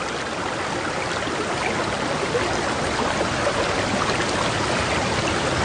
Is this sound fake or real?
real